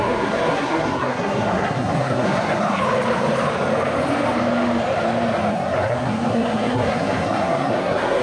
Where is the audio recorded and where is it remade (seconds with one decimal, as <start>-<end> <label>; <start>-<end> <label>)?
0.0-2.8 remade; 2.8-5.5 recorded; 5.5-8.2 remade